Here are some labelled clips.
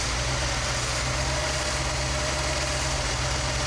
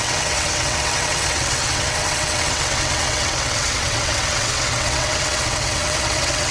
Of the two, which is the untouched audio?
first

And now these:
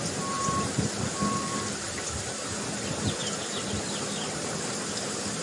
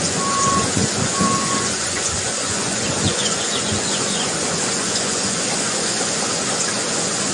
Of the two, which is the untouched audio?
first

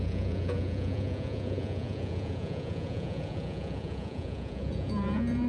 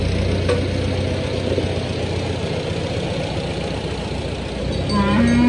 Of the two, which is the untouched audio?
second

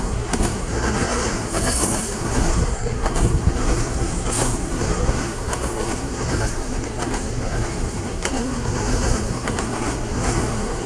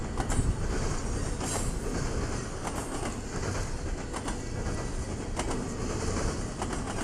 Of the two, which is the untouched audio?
second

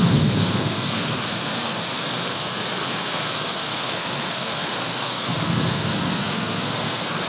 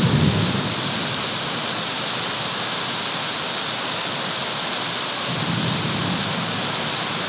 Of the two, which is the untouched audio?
second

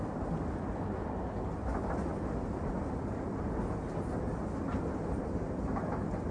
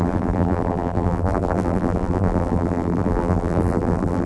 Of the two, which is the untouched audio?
first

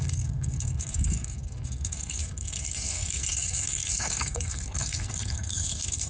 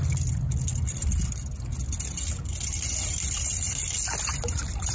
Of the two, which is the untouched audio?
second